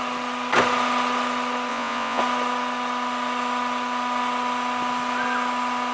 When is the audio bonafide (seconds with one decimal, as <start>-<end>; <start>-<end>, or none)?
0.0-1.7; 2.2-5.9